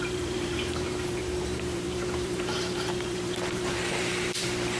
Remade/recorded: remade